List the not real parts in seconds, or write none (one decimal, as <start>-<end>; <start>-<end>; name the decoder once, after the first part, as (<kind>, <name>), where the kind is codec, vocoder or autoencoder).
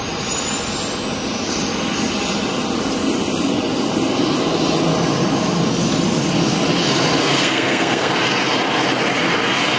7.2-8.1 (codec, SNAC)